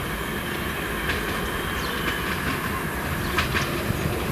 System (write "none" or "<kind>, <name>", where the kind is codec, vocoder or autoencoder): none